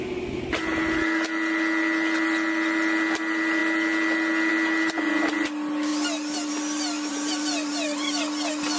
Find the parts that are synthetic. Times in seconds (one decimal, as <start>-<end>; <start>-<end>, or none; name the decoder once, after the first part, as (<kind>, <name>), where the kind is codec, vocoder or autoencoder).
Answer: 7.1-8.2 (vocoder, BigVGAN v2)